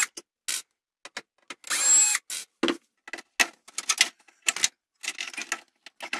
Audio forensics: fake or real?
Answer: real